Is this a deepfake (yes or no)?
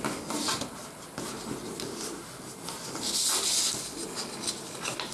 no